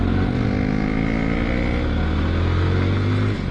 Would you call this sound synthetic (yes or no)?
no